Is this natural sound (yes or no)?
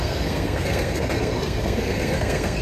no